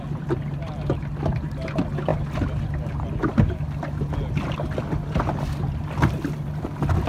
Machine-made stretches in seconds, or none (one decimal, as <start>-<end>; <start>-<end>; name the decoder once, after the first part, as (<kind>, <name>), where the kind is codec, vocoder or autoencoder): none